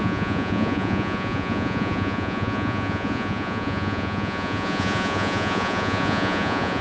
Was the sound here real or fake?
fake